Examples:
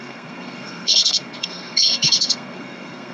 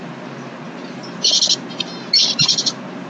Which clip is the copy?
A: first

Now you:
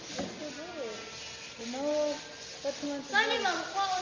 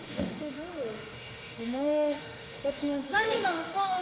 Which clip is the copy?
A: second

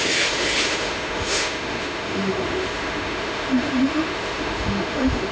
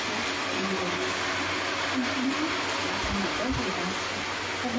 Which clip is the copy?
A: first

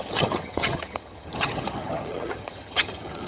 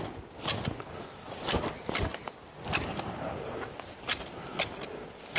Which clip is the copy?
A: first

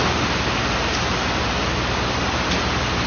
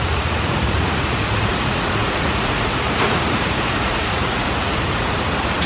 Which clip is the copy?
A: second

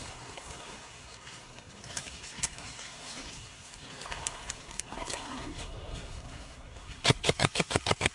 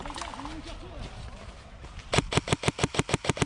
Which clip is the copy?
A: first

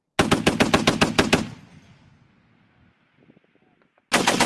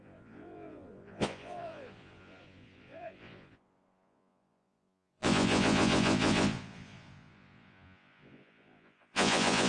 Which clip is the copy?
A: second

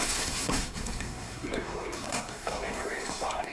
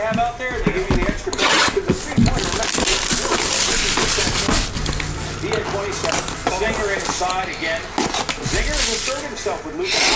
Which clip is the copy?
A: first